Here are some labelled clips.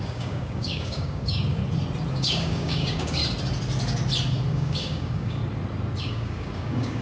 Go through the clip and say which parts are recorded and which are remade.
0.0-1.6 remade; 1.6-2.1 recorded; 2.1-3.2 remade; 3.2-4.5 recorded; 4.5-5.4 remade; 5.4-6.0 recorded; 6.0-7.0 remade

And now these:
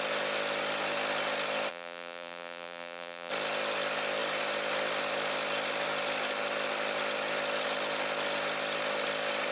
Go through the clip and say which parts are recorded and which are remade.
0.0-1.7 recorded; 1.7-3.3 remade; 3.3-9.5 recorded

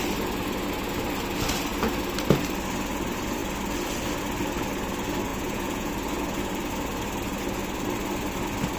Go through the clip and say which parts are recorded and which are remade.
0.0-5.3 recorded; 5.3-5.9 remade; 5.9-8.8 recorded

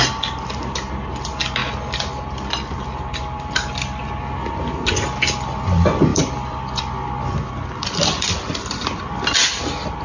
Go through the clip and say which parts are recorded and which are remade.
0.0-1.6 recorded; 1.6-4.1 remade; 4.1-6.1 recorded; 6.1-9.0 remade; 9.0-9.4 recorded; 9.4-10.0 remade

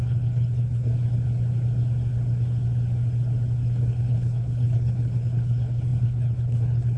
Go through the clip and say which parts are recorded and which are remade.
0.0-0.9 remade; 0.9-3.8 recorded; 3.8-7.0 remade

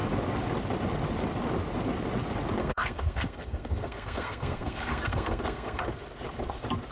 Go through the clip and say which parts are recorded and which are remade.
0.0-2.6 recorded; 2.6-5.8 remade; 5.8-6.9 recorded

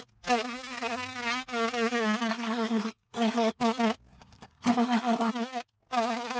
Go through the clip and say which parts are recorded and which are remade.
0.0-2.3 recorded; 2.3-3.6 remade; 3.6-4.1 recorded; 4.1-5.3 remade; 5.3-6.4 recorded

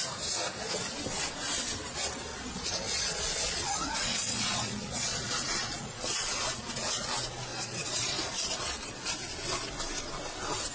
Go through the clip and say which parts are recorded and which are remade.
0.0-2.3 recorded; 2.3-7.1 remade; 7.1-7.5 recorded; 7.5-9.1 remade; 9.1-10.7 recorded